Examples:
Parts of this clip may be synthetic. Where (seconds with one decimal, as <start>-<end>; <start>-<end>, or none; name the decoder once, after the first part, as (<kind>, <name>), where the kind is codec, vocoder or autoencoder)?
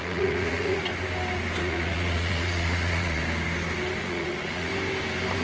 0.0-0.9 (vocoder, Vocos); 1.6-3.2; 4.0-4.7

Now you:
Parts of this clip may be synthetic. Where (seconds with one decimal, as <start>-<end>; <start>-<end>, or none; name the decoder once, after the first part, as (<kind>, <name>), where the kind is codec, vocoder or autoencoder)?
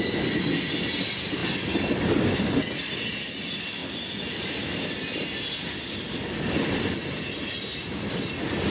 none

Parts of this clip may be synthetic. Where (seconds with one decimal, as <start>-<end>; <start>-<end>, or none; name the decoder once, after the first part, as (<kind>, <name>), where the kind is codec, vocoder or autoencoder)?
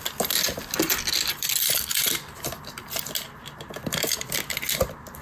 3.8-4.4 (vocoder, BigVGAN v2)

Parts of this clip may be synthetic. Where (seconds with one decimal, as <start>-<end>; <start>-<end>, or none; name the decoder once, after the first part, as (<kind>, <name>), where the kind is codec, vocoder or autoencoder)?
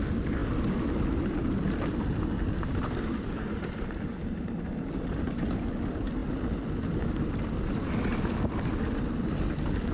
none